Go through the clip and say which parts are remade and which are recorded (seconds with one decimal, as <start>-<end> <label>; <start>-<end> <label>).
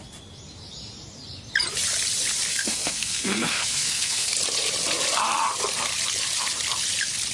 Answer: 0.0-2.5 recorded; 2.5-4.3 remade; 4.3-7.3 recorded